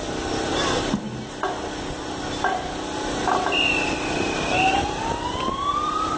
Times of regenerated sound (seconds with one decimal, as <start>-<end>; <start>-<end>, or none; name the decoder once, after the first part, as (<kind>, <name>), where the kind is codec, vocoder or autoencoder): 0.5-1.0 (vocoder, BigVGAN v2)